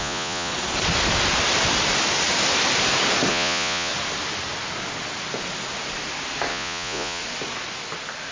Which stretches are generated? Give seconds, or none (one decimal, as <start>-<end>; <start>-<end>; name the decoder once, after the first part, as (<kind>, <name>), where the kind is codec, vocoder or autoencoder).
0.0-0.5 (vocoder, Vocos); 3.3-3.9; 6.5-7.2